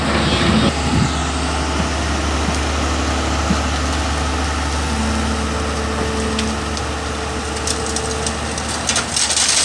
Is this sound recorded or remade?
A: recorded